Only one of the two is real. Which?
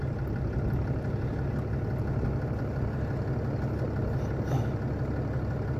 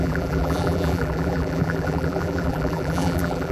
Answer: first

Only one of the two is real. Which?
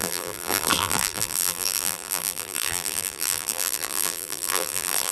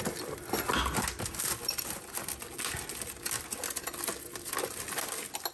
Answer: second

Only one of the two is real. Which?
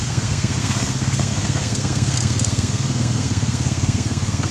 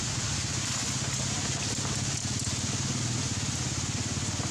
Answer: second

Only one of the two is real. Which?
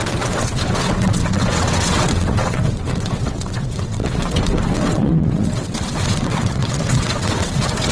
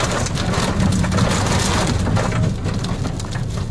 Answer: second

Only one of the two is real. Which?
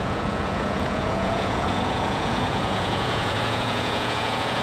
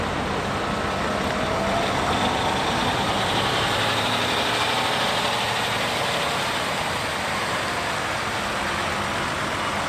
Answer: second